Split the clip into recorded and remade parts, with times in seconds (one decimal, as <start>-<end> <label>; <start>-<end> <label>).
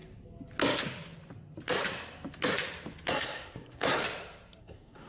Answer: 0.0-3.1 recorded; 3.1-4.0 remade; 4.0-4.6 recorded; 4.6-5.1 remade